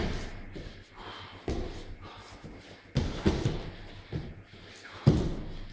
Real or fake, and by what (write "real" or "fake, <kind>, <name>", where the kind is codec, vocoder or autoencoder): real